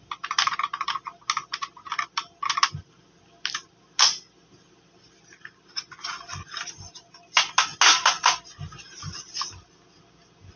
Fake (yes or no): no